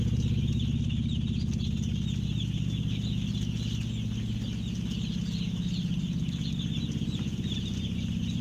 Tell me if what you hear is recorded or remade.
recorded